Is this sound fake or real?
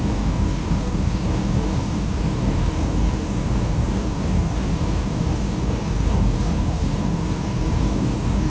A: fake